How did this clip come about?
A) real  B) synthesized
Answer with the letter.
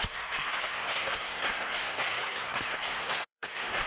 B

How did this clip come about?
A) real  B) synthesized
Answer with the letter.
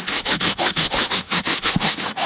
B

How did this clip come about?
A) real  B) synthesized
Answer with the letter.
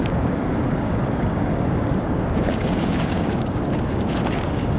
B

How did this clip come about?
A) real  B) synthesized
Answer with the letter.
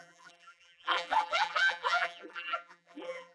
B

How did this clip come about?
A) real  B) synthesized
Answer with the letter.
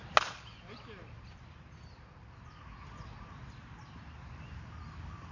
A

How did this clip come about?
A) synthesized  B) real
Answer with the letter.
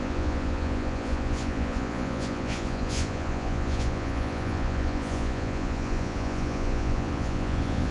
A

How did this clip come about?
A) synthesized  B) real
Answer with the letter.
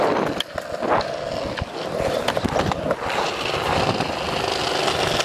B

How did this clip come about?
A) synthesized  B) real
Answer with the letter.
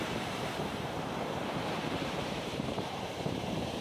A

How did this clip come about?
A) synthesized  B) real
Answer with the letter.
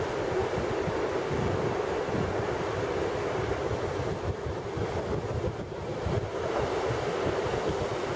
B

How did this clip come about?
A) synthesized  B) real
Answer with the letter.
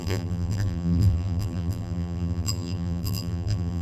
A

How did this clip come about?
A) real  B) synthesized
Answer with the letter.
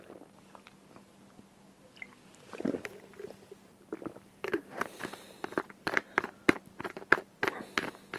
A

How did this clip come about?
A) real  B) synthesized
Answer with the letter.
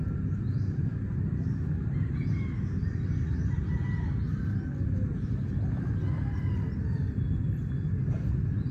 A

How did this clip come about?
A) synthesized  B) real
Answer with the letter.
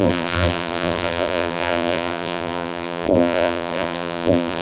A